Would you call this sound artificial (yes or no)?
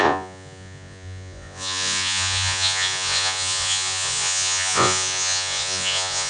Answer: yes